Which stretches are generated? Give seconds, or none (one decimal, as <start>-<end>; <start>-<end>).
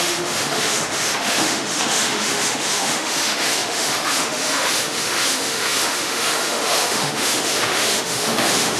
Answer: 0.0-8.8